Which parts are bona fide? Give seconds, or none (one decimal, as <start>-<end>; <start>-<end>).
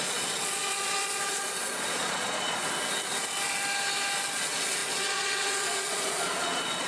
2.6-4.3